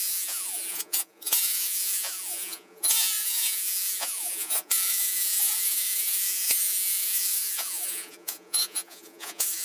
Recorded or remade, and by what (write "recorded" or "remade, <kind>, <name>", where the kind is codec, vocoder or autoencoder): remade, vocoder, Vocos